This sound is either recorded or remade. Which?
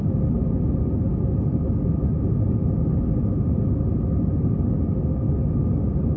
recorded